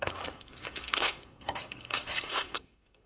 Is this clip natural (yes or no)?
no